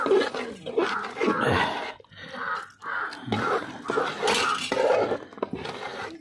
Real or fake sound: real